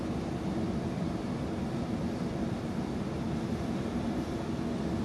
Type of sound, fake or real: real